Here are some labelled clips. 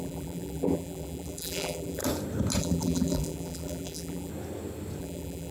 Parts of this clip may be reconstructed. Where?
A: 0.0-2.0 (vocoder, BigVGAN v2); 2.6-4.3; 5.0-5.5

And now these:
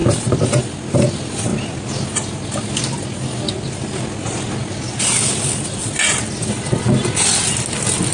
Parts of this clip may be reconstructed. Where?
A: none

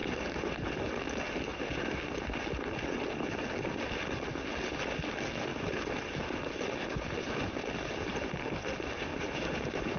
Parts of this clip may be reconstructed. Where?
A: 0.0-0.5 (vocoder, BigVGAN v2); 5.5-6.4; 9.1-10.0

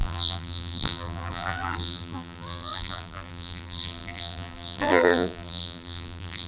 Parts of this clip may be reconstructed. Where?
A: 0.0-6.5 (vocoder, BigVGAN v2)

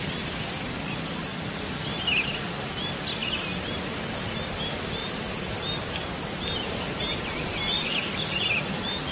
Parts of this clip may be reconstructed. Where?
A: none

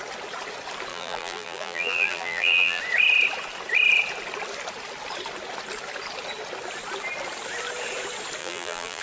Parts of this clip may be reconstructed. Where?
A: 0.9-2.8 (vocoder, BigVGAN v2); 8.4-9.0

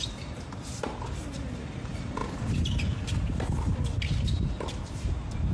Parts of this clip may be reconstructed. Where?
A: 0.0-2.2 (vocoder, BigVGAN v2); 4.8-5.5

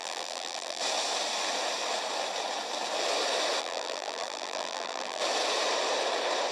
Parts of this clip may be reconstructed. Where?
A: 0.0-0.8 (vocoder, BigVGAN v2); 3.6-5.2